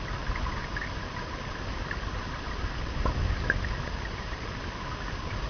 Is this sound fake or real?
real